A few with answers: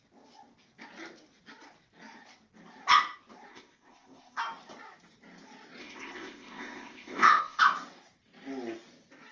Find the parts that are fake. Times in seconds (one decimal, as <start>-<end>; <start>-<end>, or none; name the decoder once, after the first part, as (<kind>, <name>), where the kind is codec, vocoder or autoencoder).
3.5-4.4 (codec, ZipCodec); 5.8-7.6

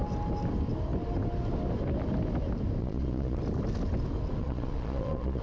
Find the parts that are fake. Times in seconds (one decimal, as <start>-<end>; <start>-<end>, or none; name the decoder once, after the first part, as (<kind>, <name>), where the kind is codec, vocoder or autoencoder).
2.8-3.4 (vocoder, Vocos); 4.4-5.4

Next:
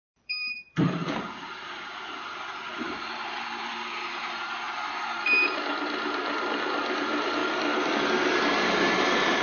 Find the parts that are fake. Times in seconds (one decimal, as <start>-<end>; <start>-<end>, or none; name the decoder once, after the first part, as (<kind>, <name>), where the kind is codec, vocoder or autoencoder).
0.0-7.4 (vocoder, BigVGAN v2); 8.3-9.4

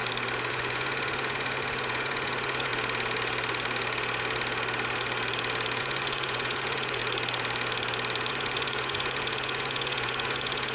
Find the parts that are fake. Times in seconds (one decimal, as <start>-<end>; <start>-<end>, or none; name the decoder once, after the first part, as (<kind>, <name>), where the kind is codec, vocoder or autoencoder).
0.5-2.7 (vocoder, Vocos); 5.8-7.0; 8.3-10.7

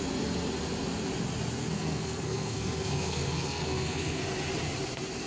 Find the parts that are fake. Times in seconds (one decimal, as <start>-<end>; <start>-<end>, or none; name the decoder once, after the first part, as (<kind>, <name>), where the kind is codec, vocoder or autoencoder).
1.6-4.2 (codec, SNAC)

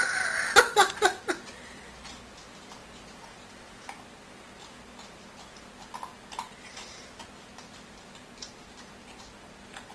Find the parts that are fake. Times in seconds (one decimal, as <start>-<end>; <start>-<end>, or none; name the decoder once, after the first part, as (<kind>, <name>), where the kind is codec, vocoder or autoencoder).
none

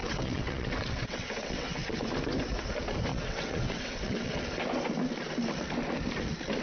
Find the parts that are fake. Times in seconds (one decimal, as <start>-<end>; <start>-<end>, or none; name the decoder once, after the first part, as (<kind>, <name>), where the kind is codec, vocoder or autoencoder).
0.0-2.1 (vocoder, WaveNeXt); 3.1-4.4